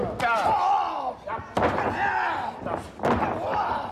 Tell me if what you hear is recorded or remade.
recorded